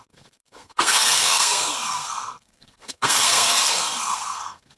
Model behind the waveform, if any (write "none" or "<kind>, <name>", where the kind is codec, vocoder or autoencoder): codec, SNAC